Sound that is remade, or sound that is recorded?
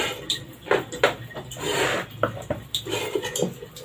recorded